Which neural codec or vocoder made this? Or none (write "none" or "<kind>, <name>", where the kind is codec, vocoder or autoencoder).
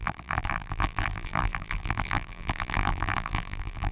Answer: vocoder, BigVGAN v2